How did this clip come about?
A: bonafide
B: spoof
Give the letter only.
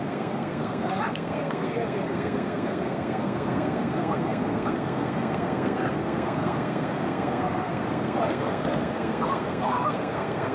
B